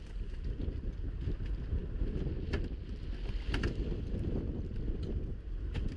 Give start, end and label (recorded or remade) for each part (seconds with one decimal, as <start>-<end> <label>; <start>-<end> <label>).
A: 0.0-6.0 recorded